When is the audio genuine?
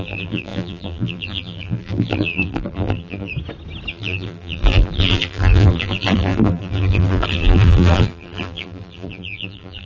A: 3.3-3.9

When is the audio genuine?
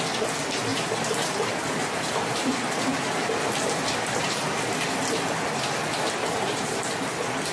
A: 0.0-0.7; 4.6-6.2; 7.0-7.5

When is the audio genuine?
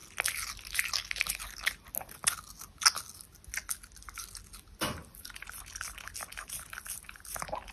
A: 0.0-5.0; 5.6-7.7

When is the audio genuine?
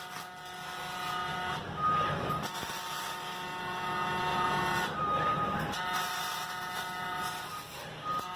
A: 0.0-1.3; 2.7-4.3; 7.5-8.4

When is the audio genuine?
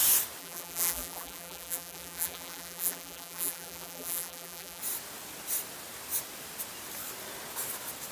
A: 0.0-0.4; 4.8-8.1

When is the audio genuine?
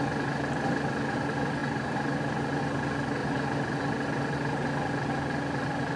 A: 0.0-1.6; 2.6-3.2; 3.8-6.0